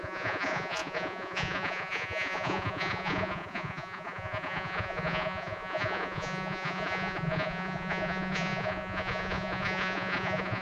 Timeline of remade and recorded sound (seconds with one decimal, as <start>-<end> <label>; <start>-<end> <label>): 0.0-10.6 remade